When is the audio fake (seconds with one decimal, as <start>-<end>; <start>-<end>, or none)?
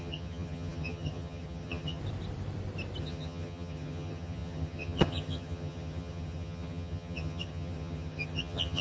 0.0-2.0; 3.0-8.8